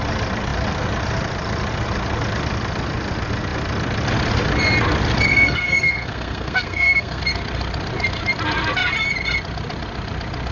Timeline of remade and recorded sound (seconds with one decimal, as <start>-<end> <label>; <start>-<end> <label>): 0.0-5.3 recorded; 5.3-7.2 remade; 7.2-10.5 recorded